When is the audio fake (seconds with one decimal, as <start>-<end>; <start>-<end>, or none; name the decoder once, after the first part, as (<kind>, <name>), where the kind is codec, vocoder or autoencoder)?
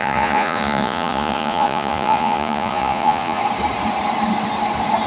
0.0-3.4 (vocoder, Vocos)